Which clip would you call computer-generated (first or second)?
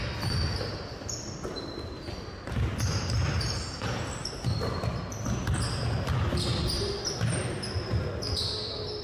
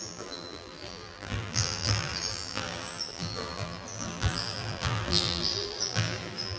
second